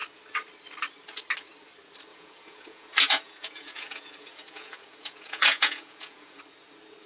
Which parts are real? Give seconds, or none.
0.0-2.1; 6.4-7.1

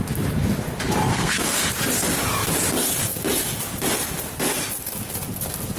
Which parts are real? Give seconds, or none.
0.0-1.1; 1.7-5.8

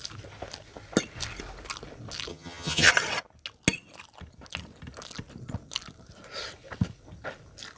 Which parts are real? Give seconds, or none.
0.0-2.3; 2.9-7.8

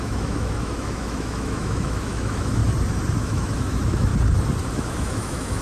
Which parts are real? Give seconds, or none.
2.6-3.2; 4.1-4.7

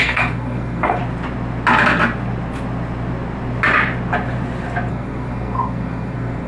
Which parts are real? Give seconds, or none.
1.0-4.9

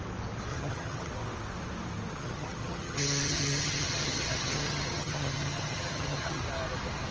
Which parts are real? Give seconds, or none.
0.0-0.5; 1.1-2.1; 6.4-7.1